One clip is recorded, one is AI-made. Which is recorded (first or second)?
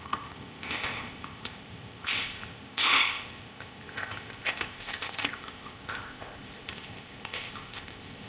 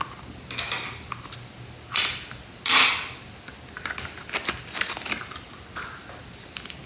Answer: second